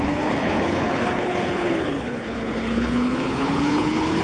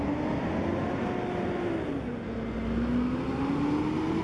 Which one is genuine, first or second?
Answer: second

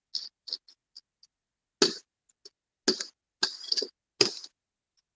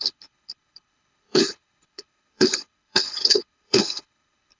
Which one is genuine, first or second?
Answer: first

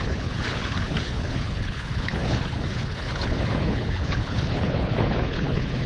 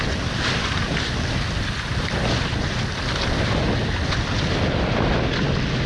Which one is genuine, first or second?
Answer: second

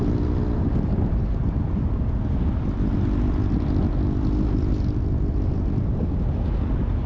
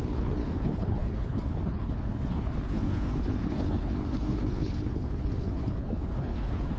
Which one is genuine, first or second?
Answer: first